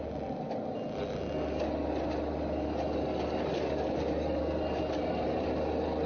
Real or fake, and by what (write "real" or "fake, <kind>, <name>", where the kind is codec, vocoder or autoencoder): real